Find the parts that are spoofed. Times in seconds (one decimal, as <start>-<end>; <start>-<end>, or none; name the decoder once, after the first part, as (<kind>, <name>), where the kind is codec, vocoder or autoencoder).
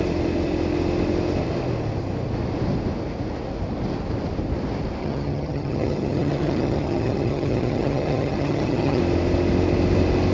5.0-9.0 (vocoder, HiFi-GAN)